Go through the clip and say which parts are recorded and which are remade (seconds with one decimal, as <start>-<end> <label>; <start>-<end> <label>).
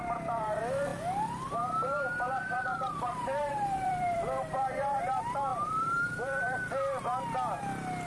0.0-3.4 recorded; 3.4-5.0 remade; 5.0-5.5 recorded; 5.5-6.7 remade; 6.7-8.1 recorded